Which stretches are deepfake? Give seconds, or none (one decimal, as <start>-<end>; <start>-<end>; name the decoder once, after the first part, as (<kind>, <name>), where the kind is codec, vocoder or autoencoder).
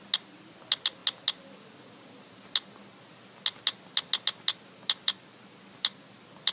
none